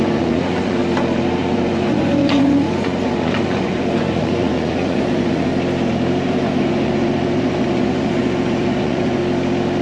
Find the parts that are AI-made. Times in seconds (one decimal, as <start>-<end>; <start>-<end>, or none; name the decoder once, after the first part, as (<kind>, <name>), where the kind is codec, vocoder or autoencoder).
0.0-0.8 (vocoder, Vocos); 1.4-5.5; 6.3-9.2